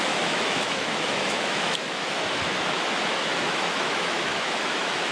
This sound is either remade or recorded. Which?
remade